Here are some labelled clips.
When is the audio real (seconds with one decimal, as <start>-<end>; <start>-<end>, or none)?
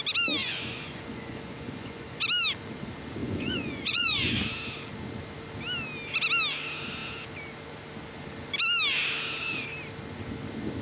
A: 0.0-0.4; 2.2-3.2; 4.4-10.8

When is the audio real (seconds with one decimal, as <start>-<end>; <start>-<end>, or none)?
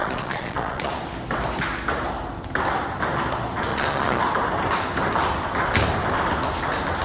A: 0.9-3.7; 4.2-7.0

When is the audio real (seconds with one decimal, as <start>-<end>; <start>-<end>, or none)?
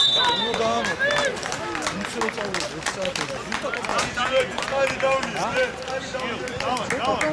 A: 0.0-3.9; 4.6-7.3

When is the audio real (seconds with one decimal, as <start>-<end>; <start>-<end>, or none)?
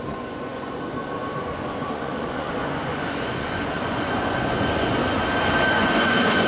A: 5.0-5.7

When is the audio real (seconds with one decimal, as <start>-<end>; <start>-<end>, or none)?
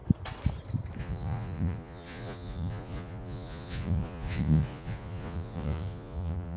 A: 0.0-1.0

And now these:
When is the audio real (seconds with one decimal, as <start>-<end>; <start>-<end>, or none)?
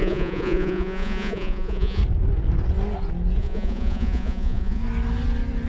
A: 2.0-3.4; 4.8-5.7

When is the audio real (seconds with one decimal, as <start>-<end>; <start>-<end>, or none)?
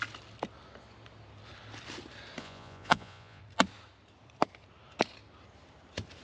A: 0.0-2.4; 3.4-6.2